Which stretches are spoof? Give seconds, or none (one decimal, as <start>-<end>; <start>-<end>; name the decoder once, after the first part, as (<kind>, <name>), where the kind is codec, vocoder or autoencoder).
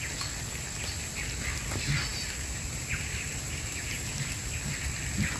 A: none